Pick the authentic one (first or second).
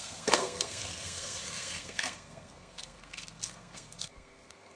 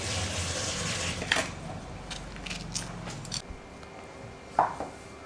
second